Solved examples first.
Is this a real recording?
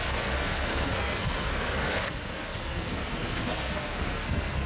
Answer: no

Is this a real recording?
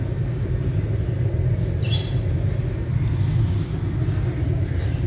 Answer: yes